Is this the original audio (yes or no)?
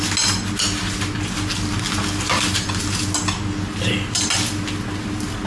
yes